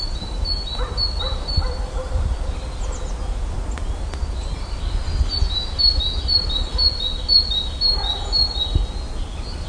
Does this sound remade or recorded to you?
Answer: recorded